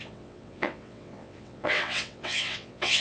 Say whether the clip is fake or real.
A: fake